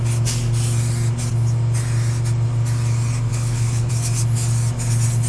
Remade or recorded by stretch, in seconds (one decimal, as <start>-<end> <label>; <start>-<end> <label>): 0.0-3.3 recorded; 3.3-3.9 remade; 3.9-5.3 recorded